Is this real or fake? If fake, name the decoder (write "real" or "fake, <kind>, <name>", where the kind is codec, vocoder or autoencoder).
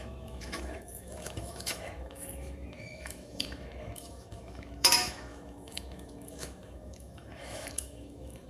fake, autoencoder, DAC-VAE